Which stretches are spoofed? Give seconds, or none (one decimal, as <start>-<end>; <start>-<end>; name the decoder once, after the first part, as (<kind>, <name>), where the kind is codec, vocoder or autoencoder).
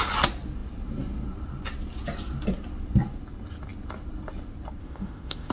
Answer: 4.8-5.5 (autoencoder, DAC-VAE)